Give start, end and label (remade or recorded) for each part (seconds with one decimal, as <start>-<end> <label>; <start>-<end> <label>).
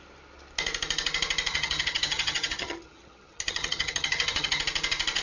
0.0-1.5 recorded; 1.5-4.6 remade; 4.6-5.2 recorded